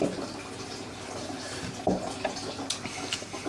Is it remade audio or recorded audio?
recorded